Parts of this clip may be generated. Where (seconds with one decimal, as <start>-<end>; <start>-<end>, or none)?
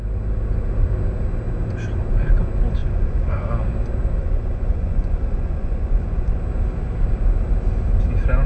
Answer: 2.8-3.5; 4.2-6.4